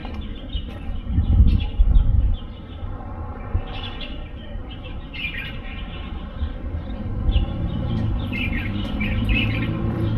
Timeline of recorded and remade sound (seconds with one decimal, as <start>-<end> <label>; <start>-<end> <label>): 0.0-10.2 remade

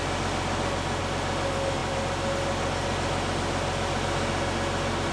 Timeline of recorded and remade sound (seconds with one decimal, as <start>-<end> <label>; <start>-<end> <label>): 0.0-5.1 recorded

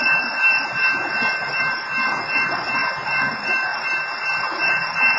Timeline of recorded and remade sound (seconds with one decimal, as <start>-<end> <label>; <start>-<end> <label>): 0.0-5.2 remade